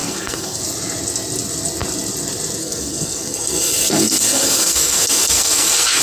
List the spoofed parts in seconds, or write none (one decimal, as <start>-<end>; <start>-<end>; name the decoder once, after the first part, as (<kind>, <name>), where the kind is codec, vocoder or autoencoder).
0.0-0.6 (codec, SNAC); 2.6-6.0